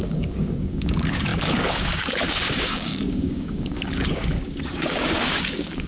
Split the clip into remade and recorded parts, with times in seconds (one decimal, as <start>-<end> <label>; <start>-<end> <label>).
0.0-5.9 remade